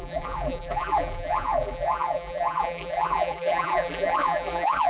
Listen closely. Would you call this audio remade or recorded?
remade